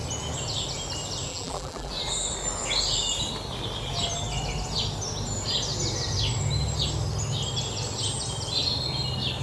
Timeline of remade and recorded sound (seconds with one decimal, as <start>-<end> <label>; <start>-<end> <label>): 0.0-1.3 recorded; 1.3-1.9 remade; 1.9-9.4 recorded